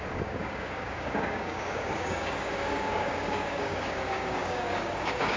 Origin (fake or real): fake